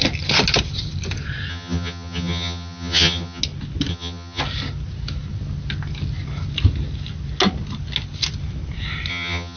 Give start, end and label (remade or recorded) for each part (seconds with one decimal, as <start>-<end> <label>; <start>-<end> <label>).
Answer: 0.0-1.5 recorded; 1.5-3.4 remade; 3.4-3.9 recorded; 3.9-4.4 remade; 4.4-9.1 recorded; 9.1-9.6 remade